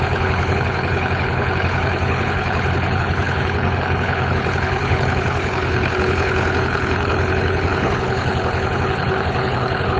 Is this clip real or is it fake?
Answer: fake